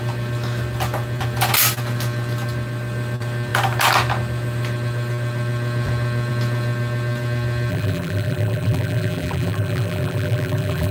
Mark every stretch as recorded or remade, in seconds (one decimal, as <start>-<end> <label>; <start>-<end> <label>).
0.0-7.7 recorded; 7.7-10.9 remade